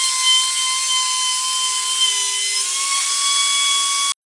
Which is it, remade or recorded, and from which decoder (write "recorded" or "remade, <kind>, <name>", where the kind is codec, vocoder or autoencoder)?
recorded